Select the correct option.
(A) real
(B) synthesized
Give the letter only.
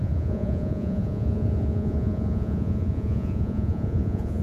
B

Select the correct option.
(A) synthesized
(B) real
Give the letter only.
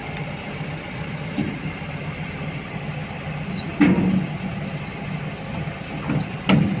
B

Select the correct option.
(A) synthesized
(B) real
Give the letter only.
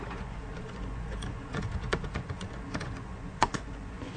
A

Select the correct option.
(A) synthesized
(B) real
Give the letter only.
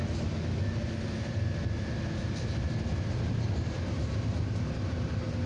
B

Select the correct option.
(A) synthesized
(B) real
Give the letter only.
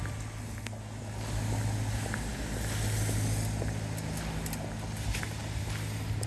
B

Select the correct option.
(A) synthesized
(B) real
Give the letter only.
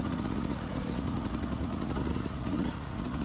A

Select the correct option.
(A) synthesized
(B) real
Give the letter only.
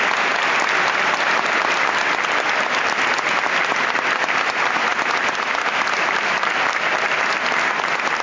B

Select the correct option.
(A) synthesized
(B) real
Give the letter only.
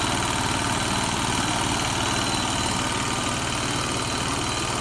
B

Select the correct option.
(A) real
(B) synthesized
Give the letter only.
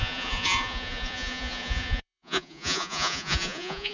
B